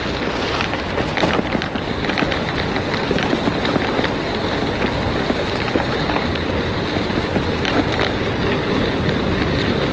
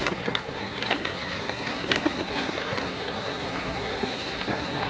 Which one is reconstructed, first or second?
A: second